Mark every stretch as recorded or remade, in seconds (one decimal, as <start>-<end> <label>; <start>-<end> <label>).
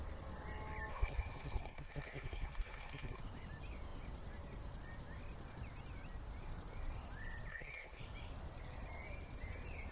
0.0-0.9 recorded; 0.9-3.2 remade; 3.2-7.5 recorded; 7.5-8.0 remade; 8.0-9.9 recorded